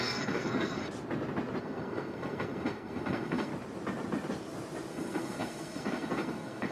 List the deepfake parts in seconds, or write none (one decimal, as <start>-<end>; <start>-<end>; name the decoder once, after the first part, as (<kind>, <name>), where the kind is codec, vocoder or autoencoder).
0.0-0.8 (codec, SNAC); 1.6-3.5; 4.9-6.7

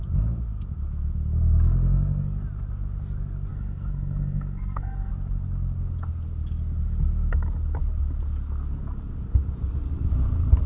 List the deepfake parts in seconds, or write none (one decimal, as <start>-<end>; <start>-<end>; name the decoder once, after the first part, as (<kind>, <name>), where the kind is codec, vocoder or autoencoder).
3.5-5.1 (codec, SNAC)

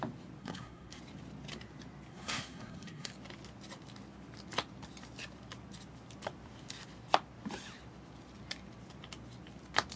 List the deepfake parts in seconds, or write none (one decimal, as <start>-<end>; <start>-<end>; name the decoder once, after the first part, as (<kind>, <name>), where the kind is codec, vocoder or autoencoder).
0.4-1.0 (codec, SNAC); 2.1-3.1

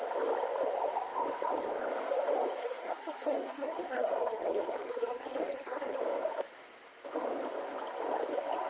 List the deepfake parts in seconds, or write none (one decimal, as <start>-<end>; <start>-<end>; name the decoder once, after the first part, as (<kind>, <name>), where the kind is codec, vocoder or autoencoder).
2.6-6.0 (codec, SNAC)